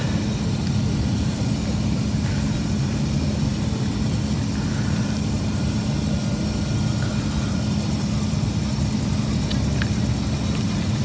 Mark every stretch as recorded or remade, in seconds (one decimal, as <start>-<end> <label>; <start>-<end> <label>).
0.0-11.0 recorded